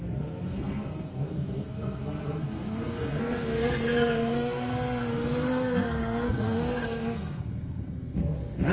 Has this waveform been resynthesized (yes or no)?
yes